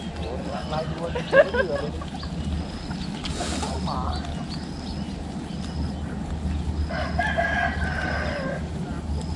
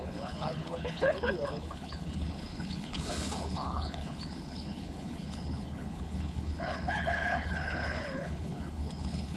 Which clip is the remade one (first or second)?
second